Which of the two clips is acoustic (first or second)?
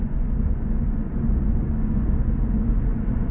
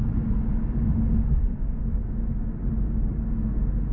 second